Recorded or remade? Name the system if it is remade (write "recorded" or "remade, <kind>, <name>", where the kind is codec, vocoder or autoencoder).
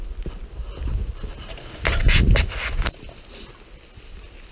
recorded